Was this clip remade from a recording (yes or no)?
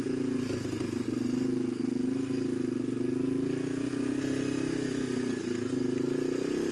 no